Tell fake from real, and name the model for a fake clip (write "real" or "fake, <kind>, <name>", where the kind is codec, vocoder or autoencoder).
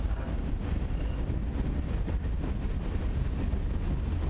real